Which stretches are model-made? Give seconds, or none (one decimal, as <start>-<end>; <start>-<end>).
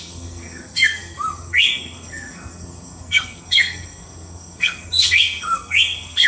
0.0-6.3